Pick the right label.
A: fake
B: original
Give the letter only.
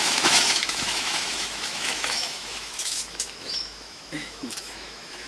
A